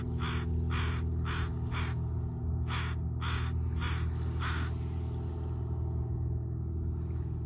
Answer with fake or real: real